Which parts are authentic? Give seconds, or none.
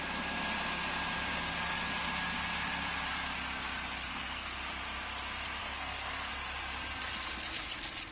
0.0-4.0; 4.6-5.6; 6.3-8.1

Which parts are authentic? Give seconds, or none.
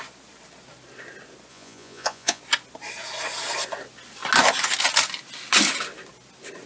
0.0-1.5; 2.4-6.7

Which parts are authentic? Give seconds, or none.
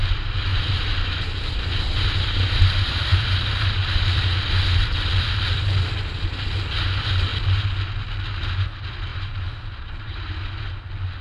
0.0-0.5; 1.5-9.1; 10.3-11.2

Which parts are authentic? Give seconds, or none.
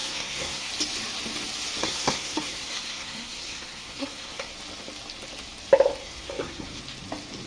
0.7-1.8; 4.5-6.0; 6.8-7.5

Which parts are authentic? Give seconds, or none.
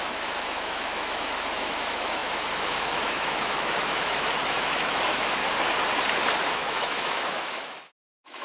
5.4-6.4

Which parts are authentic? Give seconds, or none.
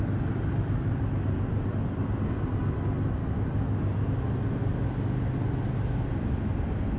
2.6-7.0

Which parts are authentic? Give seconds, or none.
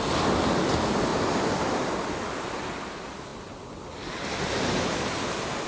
0.0-1.1; 2.6-5.7